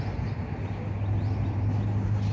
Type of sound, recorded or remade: recorded